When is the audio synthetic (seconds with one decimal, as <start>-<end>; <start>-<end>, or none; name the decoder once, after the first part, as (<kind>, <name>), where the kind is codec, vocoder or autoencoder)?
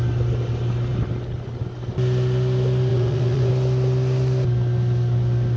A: 2.9-3.5 (vocoder, Vocos)